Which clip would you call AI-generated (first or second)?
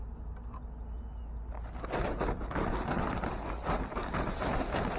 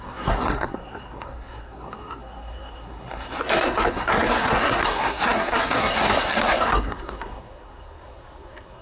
second